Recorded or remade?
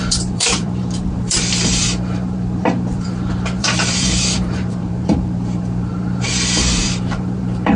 remade